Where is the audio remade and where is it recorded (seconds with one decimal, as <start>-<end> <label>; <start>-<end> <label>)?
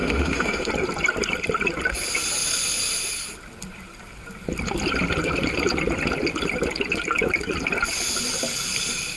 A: 0.0-0.7 remade; 0.7-9.2 recorded